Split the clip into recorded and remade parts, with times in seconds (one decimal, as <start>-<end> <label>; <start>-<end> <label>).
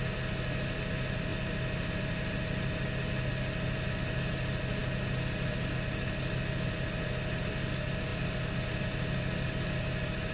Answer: 0.0-10.3 recorded